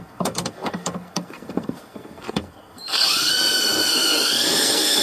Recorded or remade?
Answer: remade